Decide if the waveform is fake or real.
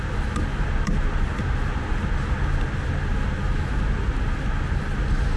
real